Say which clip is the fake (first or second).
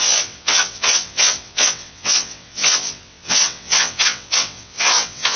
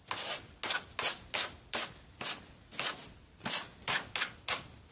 first